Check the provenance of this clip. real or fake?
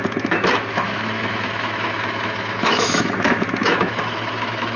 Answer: fake